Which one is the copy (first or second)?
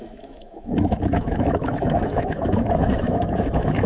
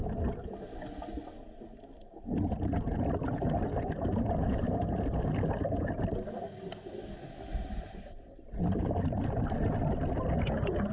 first